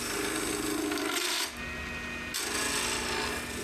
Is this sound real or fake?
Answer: real